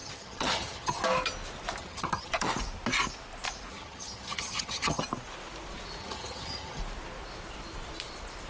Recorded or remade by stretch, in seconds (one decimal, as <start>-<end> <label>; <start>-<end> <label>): 0.0-1.0 remade; 1.0-1.8 recorded; 1.8-2.5 remade; 2.5-3.7 recorded; 3.7-5.0 remade; 5.0-6.0 recorded; 6.0-6.8 remade; 6.8-8.5 recorded